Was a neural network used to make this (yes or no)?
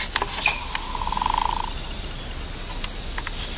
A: no